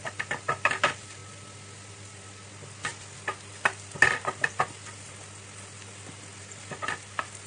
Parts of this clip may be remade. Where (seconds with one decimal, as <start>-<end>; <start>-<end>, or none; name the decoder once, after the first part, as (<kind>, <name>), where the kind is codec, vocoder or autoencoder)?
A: 0.0-1.2 (vocoder, BigVGAN v2); 1.9-2.9; 3.5-7.5